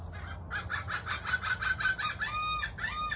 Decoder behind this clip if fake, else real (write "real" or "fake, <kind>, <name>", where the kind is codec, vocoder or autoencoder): real